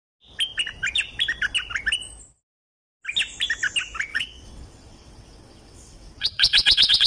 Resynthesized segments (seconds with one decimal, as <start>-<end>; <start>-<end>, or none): 4.1-7.1